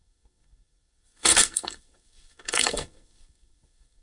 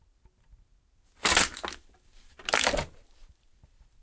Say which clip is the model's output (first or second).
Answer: first